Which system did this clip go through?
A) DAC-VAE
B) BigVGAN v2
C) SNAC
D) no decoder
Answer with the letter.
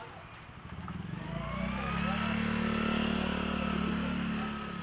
D